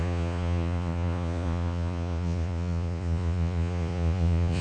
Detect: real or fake fake